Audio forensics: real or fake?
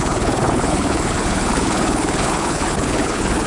fake